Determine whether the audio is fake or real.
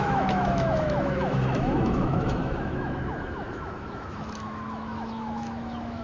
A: fake